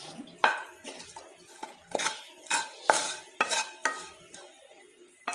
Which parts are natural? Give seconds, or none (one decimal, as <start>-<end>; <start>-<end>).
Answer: 0.0-3.0; 3.7-5.3